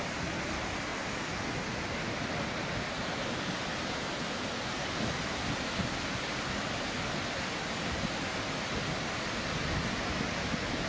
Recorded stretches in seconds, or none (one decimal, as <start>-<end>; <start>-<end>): 0.0-10.9